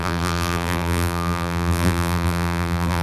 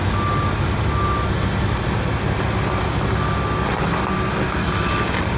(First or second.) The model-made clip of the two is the first